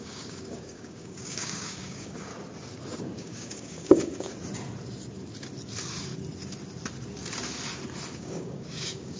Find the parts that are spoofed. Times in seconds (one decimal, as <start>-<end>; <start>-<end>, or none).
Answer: 0.0-2.3; 3.0-4.3; 8.1-9.2